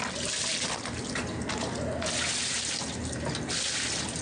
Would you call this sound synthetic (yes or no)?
no